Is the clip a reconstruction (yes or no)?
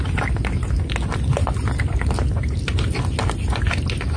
no